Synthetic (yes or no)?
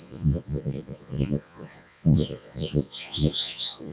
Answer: yes